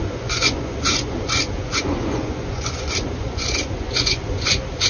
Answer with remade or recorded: remade